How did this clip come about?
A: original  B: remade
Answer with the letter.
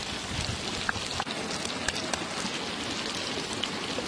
A